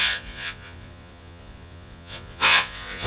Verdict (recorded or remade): remade